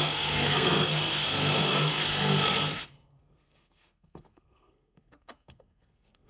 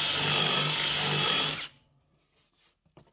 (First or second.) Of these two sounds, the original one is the second